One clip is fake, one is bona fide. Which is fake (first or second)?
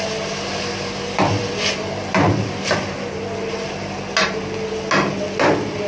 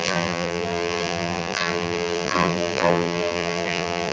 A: second